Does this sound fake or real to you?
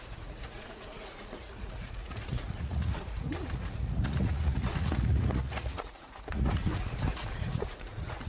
fake